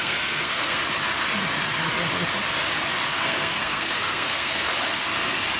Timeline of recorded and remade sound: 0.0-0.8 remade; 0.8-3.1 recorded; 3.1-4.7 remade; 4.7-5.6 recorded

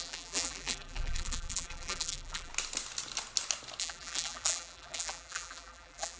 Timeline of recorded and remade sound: 0.0-2.5 remade; 2.5-3.8 recorded; 3.8-6.2 remade